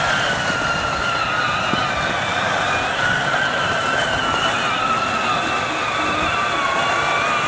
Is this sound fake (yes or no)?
no